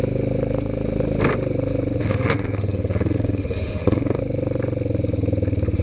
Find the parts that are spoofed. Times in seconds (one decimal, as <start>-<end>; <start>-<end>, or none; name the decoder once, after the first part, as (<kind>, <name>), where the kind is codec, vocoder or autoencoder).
2.0-4.2 (autoencoder, DAC-VAE)